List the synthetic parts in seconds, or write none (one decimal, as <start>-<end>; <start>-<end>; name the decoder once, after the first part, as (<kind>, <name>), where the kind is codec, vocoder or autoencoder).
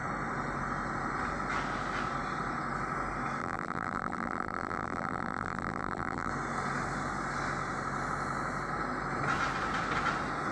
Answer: 3.4-6.3 (vocoder, BigVGAN v2)